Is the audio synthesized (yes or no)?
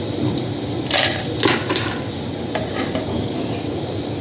no